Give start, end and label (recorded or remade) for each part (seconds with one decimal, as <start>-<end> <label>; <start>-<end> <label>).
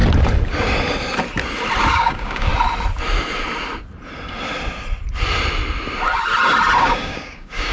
0.0-1.9 recorded; 1.9-2.5 remade; 2.5-6.8 recorded; 6.8-7.7 remade